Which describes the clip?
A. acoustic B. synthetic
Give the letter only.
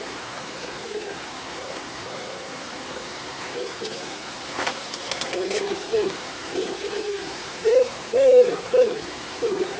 B